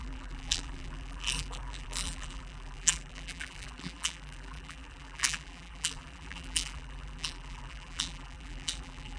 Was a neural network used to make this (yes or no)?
yes